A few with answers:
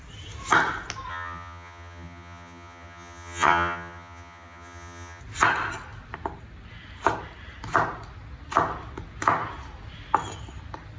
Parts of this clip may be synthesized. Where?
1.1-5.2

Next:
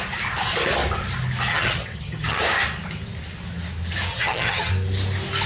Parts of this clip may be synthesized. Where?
1.5-2.4; 4.1-4.7

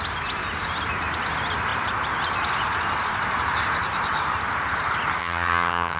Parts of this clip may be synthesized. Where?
5.2-6.0